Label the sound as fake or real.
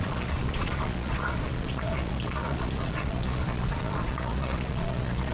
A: fake